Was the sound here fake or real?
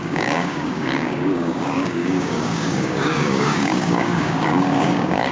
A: fake